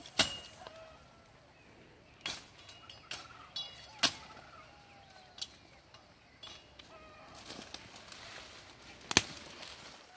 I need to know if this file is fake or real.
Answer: real